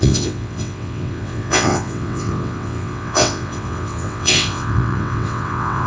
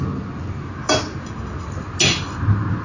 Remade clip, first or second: first